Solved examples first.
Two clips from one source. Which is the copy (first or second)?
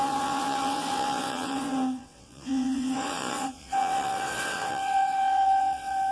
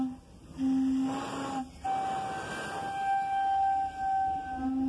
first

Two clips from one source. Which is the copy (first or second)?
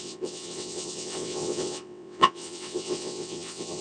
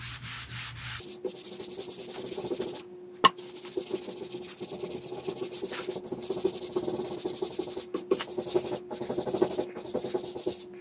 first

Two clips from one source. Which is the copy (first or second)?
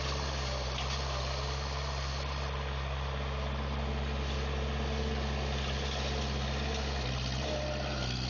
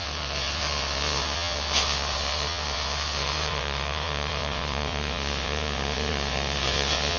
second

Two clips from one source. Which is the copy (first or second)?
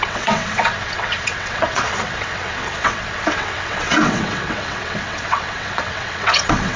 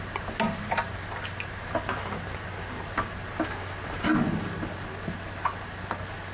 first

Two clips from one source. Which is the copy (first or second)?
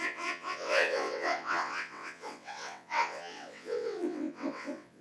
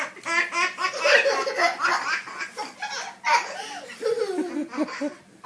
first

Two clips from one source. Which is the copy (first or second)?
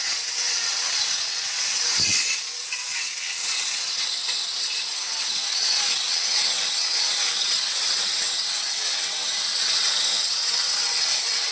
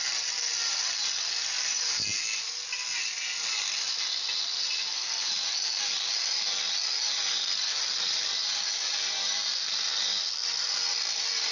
first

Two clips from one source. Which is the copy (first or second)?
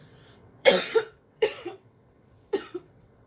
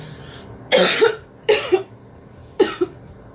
first